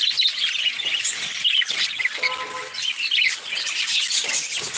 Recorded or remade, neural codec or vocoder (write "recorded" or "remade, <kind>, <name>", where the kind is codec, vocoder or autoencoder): recorded